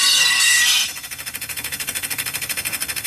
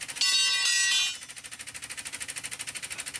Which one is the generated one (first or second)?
first